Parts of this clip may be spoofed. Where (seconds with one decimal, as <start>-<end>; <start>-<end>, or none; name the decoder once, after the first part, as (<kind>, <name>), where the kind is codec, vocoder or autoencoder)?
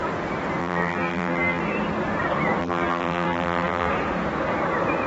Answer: 0.6-1.6 (vocoder, BigVGAN v2); 2.6-3.9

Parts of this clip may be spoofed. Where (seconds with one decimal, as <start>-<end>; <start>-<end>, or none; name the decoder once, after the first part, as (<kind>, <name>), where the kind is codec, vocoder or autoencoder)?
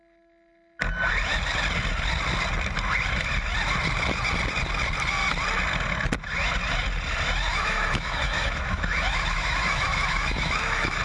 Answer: 7.5-11.0 (autoencoder, DAC-VAE)